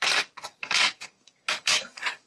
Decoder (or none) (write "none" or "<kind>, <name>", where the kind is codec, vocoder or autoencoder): codec, DAC